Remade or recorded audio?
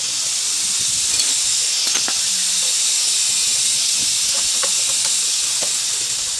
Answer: recorded